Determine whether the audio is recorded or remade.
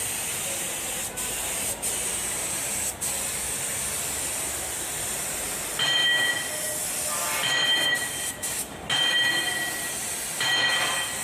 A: recorded